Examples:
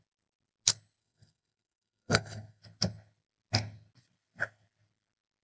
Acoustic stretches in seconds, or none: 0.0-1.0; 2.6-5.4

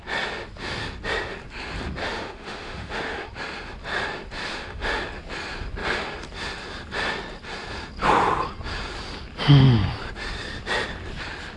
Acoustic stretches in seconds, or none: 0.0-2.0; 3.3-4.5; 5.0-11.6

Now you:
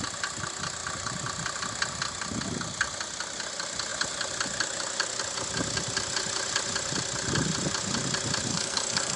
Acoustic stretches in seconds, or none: 0.0-8.5